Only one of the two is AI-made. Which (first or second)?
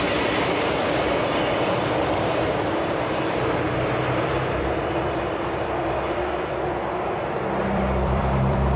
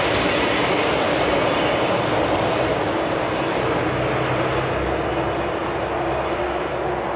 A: first